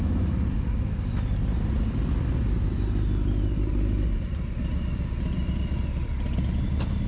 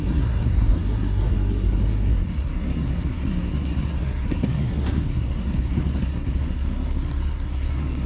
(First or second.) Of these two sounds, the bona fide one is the first